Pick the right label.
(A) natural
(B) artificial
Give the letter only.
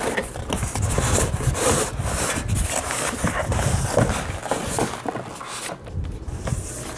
A